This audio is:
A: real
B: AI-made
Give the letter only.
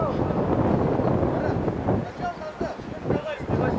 A